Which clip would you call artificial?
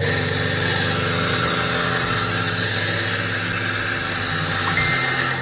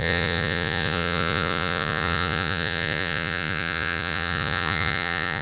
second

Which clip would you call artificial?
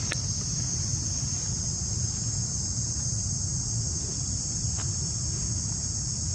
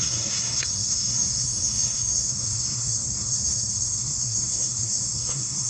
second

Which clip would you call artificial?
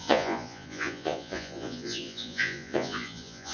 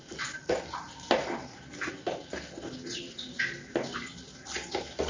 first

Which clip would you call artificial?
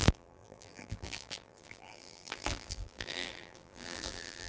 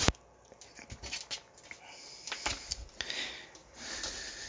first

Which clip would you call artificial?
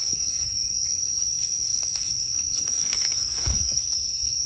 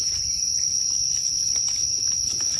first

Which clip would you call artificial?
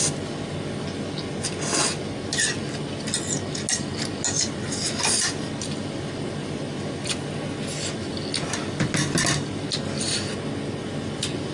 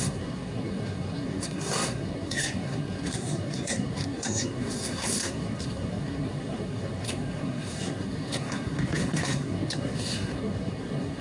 second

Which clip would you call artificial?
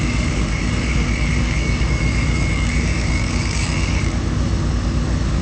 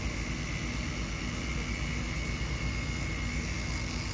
first